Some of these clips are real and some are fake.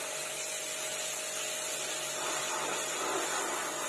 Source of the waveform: real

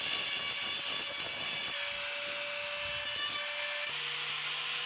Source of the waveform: real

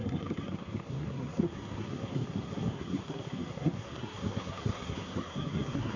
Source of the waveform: fake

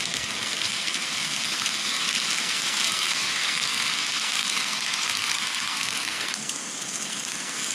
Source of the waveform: fake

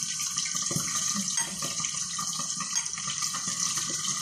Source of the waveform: real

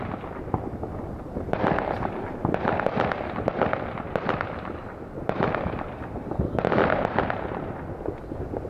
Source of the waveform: real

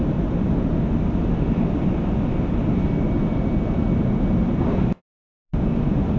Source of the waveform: real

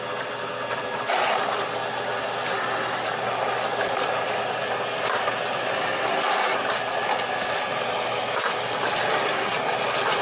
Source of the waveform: real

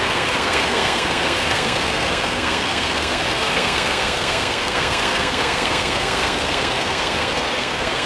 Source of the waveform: fake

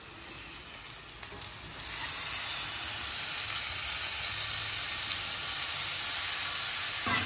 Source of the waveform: real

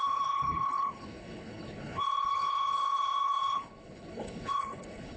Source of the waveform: fake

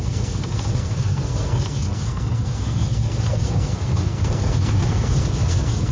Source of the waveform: fake